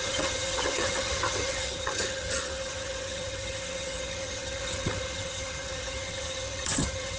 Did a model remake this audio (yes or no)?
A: yes